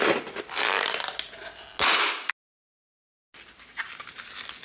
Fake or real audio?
real